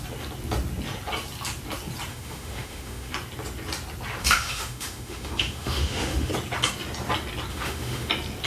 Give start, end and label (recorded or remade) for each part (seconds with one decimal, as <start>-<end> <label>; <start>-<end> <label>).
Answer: 0.0-2.1 recorded; 2.1-3.1 remade; 3.1-4.2 recorded; 4.2-6.3 remade; 6.3-7.5 recorded; 7.5-8.1 remade; 8.1-8.5 recorded